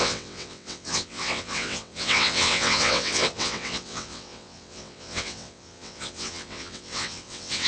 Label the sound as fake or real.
fake